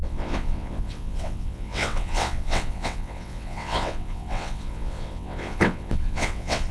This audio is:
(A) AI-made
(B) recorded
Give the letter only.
A